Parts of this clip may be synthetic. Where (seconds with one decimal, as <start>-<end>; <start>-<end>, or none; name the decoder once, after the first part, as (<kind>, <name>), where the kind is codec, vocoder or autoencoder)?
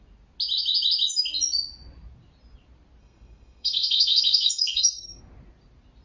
3.0-5.2 (codec, SNAC)